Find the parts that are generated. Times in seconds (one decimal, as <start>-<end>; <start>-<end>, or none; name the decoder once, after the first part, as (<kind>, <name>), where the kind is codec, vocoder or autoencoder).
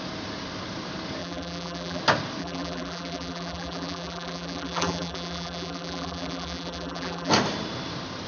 1.2-2.0 (vocoder, BigVGAN v2); 2.4-7.3